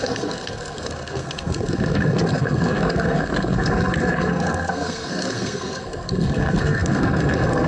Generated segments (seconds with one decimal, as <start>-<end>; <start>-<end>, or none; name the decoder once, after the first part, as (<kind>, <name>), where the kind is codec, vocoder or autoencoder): 0.0-7.7 (codec, SNAC)